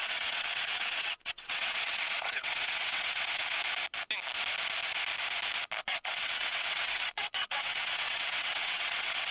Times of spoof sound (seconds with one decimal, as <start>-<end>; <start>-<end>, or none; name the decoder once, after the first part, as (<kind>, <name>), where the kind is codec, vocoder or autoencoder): 0.0-3.6 (vocoder, WaveNeXt); 5.8-9.3